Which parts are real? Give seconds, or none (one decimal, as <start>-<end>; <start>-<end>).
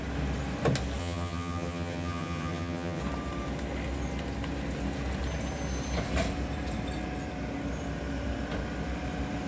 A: 0.0-1.0; 3.0-9.5